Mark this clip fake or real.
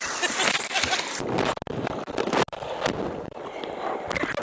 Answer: real